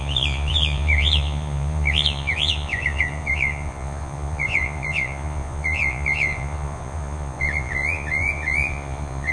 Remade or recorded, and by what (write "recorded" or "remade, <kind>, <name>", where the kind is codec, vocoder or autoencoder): remade, vocoder, Vocos